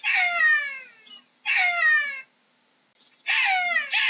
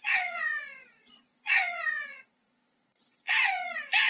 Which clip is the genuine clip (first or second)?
first